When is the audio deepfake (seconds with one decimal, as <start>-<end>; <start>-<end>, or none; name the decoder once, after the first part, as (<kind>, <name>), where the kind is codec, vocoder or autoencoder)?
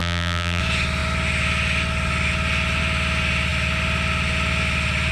0.0-0.6 (vocoder, BigVGAN v2)